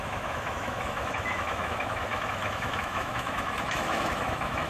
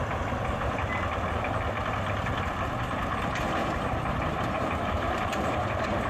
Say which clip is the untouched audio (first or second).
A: second